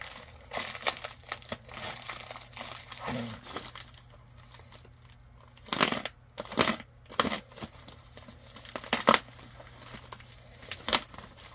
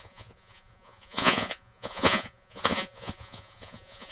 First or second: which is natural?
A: first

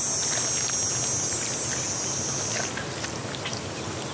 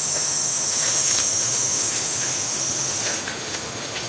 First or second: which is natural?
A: first